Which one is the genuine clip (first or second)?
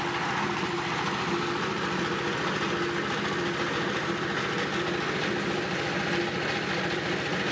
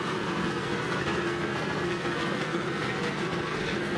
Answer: first